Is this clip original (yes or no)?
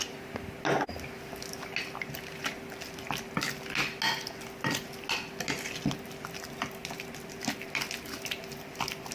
yes